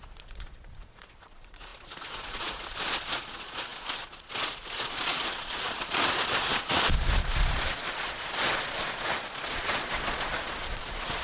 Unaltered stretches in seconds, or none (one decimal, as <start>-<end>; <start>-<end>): none